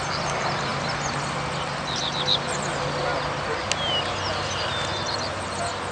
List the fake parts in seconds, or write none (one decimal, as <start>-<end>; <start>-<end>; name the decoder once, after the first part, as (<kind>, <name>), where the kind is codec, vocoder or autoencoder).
none